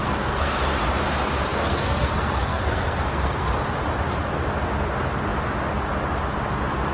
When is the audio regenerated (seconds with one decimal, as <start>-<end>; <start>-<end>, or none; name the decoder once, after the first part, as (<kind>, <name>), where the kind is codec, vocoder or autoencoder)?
0.0-0.6 (codec, SNAC); 1.5-3.5